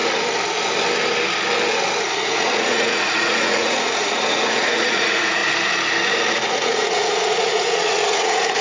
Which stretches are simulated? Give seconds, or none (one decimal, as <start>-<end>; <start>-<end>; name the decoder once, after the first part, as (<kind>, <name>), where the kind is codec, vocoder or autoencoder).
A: 2.2-5.4 (vocoder, Vocos); 6.3-8.6